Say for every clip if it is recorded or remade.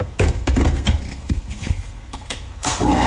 remade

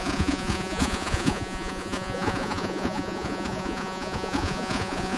remade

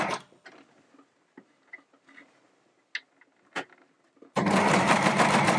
recorded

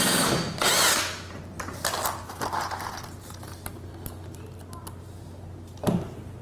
recorded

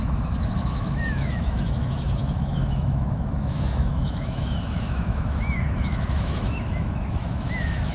remade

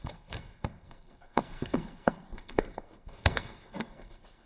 remade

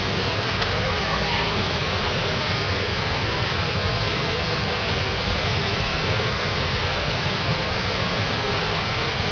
remade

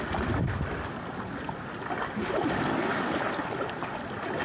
recorded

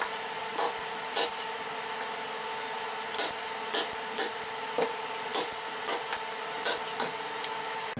recorded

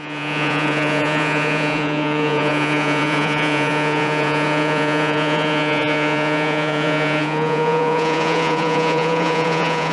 remade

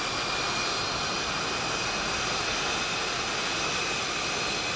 recorded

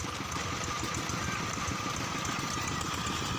recorded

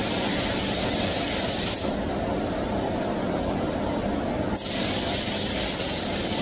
recorded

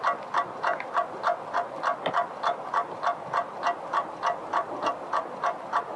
recorded